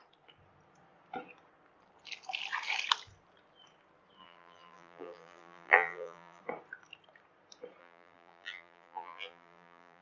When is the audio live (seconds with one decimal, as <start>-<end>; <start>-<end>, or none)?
0.0-4.2; 6.4-7.8